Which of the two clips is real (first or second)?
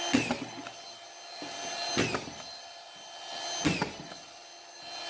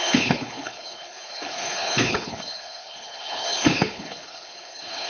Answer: first